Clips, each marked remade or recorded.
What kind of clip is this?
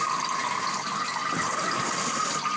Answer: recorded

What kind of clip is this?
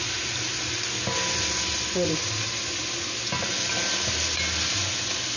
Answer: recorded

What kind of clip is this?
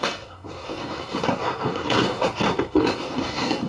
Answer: remade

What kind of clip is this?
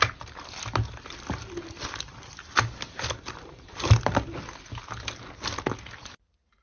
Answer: recorded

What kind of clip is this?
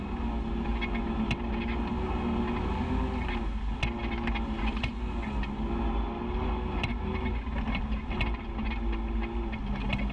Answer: recorded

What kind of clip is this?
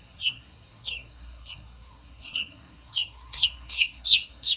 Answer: remade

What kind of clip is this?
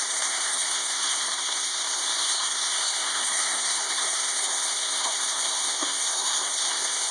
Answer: remade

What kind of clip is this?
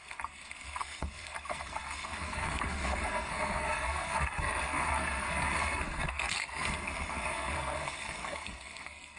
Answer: remade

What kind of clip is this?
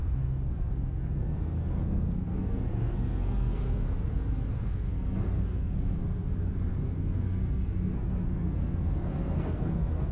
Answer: remade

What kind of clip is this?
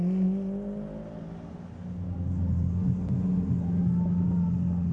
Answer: recorded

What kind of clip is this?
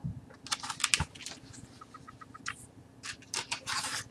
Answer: recorded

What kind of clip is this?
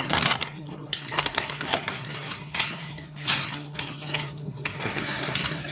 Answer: remade